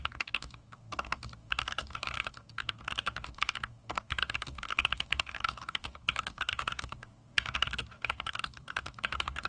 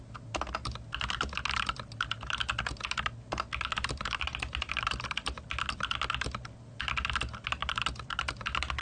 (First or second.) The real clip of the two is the second